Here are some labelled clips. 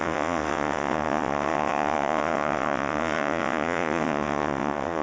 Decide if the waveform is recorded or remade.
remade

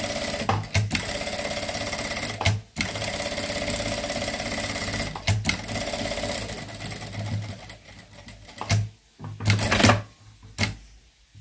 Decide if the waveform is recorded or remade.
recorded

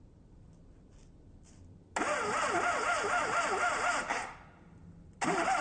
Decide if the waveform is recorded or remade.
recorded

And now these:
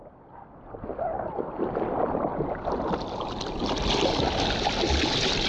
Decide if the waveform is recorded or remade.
recorded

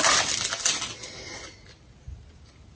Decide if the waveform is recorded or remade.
recorded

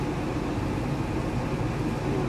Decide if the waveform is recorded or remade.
recorded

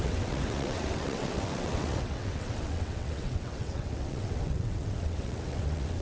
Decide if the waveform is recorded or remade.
remade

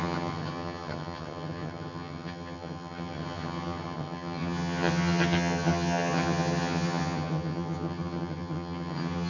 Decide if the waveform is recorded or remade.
remade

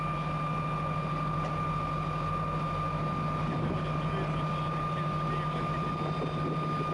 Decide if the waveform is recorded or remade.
recorded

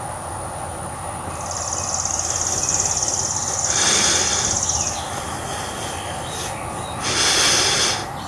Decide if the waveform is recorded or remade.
recorded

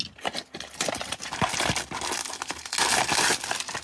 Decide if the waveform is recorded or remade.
recorded